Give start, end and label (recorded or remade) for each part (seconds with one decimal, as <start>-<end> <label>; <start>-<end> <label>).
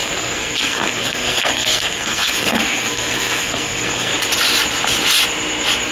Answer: 0.0-4.1 remade; 4.1-5.9 recorded